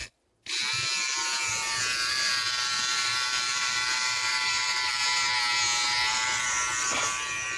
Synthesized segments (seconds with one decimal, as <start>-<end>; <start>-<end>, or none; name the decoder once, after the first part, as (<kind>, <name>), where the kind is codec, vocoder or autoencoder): 0.0-5.0 (vocoder, BigVGAN v2); 6.8-7.6